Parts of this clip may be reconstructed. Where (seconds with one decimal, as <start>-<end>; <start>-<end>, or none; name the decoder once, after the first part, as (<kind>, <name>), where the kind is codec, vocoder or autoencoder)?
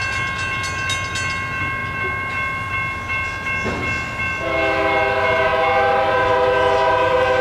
none